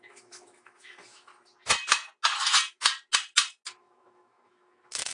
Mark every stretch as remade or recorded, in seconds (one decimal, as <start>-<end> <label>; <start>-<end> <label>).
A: 0.0-1.3 remade; 1.3-3.8 recorded; 3.8-5.1 remade